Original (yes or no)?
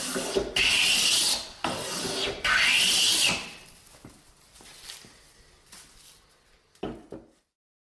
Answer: yes